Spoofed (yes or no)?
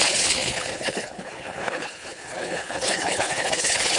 yes